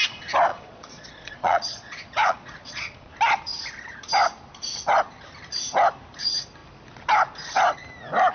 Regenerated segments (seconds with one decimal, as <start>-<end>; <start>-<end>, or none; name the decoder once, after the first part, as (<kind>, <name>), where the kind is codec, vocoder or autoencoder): 0.5-3.1 (vocoder, Vocos)